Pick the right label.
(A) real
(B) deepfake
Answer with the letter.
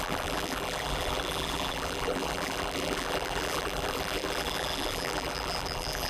B